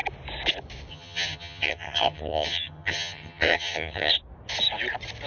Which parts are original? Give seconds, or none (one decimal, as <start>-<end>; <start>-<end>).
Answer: 0.0-0.9; 4.1-5.3